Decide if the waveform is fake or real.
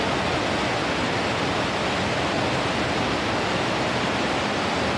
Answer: real